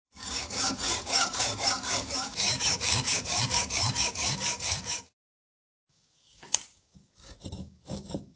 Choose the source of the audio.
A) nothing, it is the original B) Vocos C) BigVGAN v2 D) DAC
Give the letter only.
D